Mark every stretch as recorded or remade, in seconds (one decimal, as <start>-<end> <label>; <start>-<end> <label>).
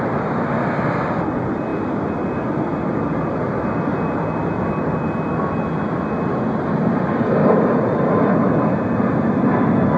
0.0-10.0 recorded